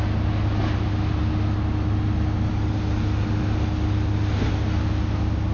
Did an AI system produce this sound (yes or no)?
no